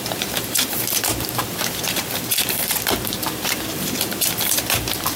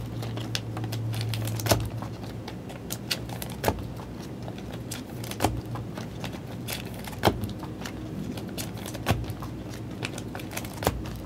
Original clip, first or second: second